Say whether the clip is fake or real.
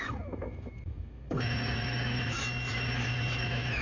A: fake